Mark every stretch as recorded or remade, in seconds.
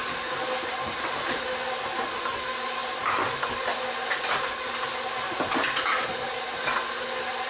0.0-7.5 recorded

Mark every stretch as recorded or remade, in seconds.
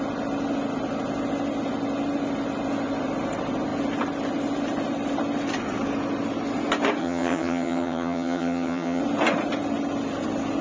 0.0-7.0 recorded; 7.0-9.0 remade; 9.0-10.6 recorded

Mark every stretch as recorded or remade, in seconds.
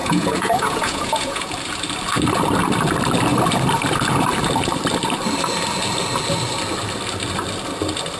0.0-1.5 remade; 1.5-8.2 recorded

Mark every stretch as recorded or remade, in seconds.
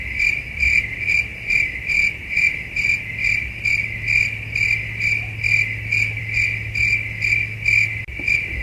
0.0-8.6 recorded